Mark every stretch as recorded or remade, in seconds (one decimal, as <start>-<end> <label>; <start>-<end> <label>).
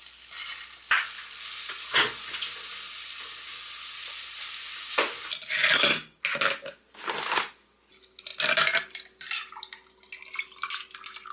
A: 0.0-11.3 recorded